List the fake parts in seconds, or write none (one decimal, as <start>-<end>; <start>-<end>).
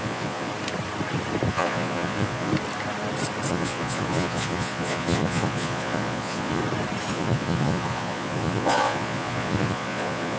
0.0-0.5; 1.5-2.5; 3.5-6.6; 7.1-10.4